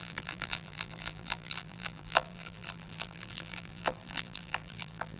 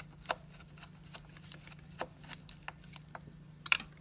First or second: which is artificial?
first